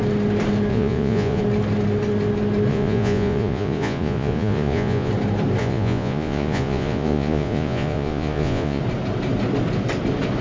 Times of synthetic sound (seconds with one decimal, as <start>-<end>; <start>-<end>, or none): 0.7-1.4; 2.7-5.1; 5.6-8.8